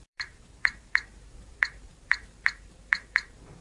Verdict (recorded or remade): remade